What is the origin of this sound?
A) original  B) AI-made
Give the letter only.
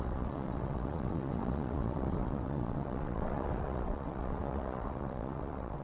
B